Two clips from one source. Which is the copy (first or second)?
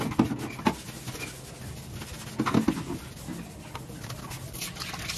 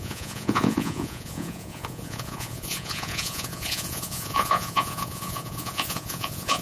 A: second